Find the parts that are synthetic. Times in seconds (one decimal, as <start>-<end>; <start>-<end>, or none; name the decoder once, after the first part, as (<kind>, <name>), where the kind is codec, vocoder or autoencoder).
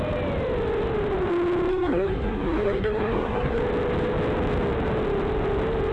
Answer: 1.7-3.6 (codec, SNAC)